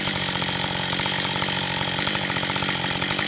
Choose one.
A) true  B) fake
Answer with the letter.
A